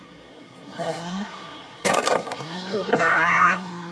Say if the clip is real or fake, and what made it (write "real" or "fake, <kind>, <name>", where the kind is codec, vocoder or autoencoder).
fake, codec, SNAC